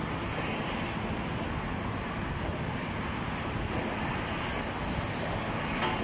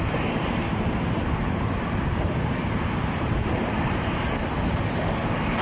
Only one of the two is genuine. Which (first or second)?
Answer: first